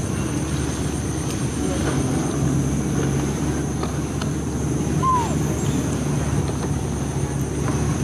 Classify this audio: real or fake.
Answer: real